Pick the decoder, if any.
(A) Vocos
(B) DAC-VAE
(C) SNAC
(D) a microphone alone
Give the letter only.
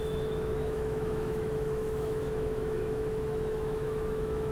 B